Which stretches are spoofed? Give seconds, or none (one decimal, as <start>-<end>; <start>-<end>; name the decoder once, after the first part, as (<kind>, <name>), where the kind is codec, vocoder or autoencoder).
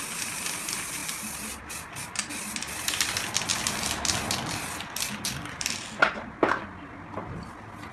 none